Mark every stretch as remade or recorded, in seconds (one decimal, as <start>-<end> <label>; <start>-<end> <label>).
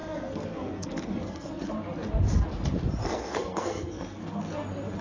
0.0-1.7 remade; 1.7-3.0 recorded; 3.0-4.4 remade; 4.4-5.0 recorded